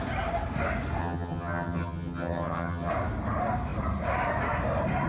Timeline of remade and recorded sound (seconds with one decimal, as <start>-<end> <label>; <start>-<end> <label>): 0.0-1.0 recorded; 1.0-2.9 remade; 2.9-5.1 recorded